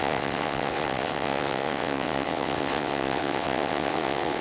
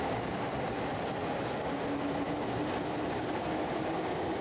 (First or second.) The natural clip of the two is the second